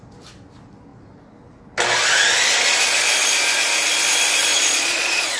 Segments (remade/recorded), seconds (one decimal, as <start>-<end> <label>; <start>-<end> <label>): 0.0-4.5 recorded; 4.5-5.4 remade